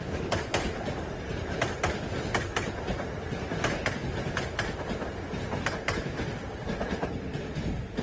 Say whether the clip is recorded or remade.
remade